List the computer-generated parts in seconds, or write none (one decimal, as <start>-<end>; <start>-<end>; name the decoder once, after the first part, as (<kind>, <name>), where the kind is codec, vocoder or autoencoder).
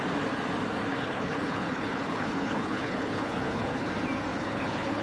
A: 0.9-3.9 (codec, HILCodec); 4.3-5.0